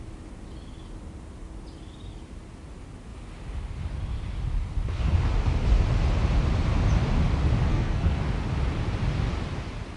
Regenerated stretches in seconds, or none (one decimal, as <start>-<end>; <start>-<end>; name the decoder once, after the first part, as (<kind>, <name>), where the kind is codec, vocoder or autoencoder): 7.7-8.2 (codec, SNAC)